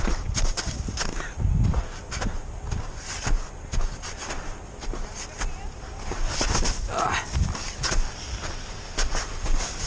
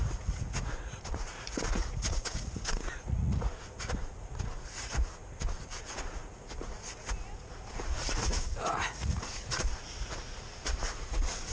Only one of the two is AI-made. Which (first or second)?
second